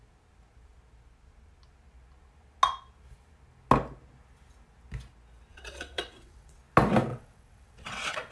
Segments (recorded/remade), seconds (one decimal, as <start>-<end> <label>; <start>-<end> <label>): 0.0-5.5 recorded; 5.5-6.6 remade; 6.6-7.1 recorded; 7.1-8.3 remade